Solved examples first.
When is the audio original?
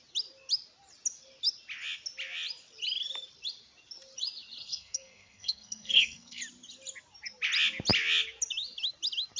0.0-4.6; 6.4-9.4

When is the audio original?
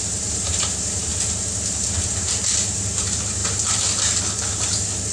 1.1-1.7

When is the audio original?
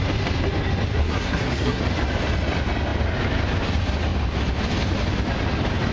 0.0-1.0; 1.8-5.9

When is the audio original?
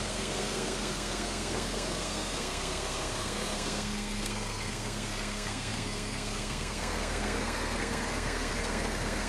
none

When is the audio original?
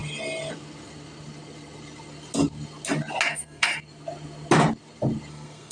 0.0-3.3; 3.7-5.3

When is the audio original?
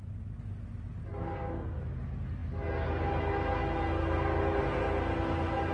0.0-1.1; 1.8-5.7